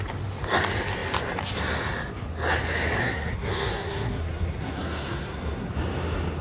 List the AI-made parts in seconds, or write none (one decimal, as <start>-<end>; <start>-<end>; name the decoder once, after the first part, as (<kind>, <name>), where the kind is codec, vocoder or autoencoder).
3.0-5.7 (codec, SNAC)